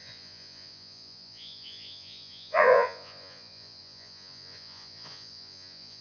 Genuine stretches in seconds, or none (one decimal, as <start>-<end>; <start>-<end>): none